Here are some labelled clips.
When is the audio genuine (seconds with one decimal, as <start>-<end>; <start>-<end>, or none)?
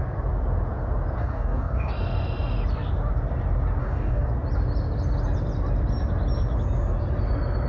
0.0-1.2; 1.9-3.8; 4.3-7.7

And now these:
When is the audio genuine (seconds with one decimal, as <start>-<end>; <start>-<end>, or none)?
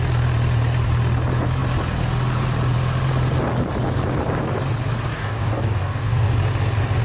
0.0-5.1; 6.3-7.0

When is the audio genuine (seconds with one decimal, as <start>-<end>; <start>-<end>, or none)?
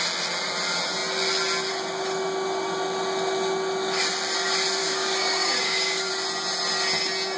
0.0-4.8; 6.1-7.4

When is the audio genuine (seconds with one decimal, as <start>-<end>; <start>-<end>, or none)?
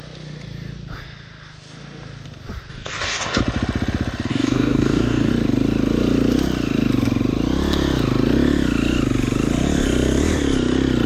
0.0-2.7; 3.4-4.3; 5.3-11.1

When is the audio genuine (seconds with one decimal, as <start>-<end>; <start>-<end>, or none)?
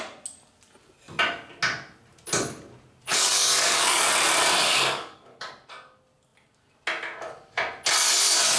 0.0-3.1; 4.1-4.6; 5.5-8.6